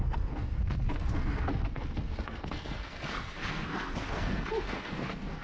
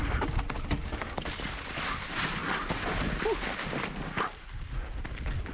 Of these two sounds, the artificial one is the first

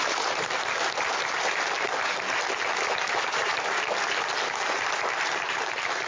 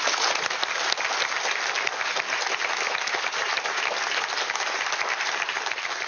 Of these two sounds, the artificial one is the first